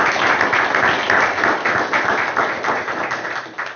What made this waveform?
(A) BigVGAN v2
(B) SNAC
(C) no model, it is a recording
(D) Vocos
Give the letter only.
C